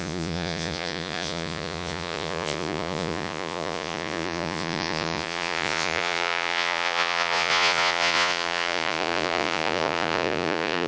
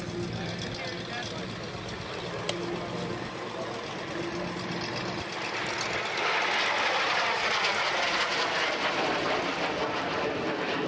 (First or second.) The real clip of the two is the second